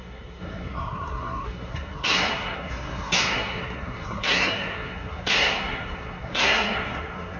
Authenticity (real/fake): fake